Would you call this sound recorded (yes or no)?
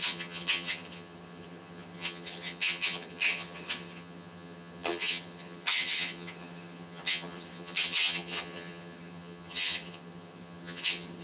no